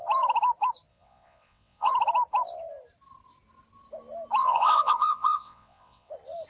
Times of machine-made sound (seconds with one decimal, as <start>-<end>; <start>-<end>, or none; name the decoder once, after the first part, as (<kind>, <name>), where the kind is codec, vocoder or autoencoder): 0.9-1.9 (vocoder, WaveNeXt); 4.4-6.1